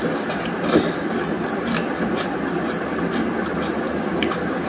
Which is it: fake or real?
real